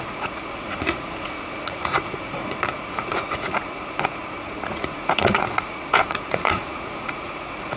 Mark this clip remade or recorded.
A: remade